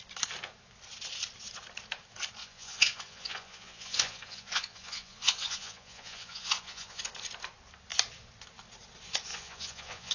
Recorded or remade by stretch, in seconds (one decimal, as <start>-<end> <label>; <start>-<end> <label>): 0.0-2.4 recorded; 2.4-7.0 remade; 7.0-9.3 recorded; 9.3-10.1 remade